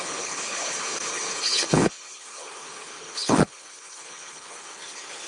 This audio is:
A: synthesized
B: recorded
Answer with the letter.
A